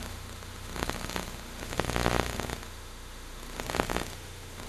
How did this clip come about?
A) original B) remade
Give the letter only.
B